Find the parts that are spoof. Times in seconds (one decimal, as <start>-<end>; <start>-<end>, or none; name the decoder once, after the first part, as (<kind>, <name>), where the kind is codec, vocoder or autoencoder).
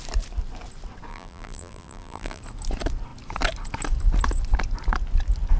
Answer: 1.1-2.4 (vocoder, BigVGAN v2)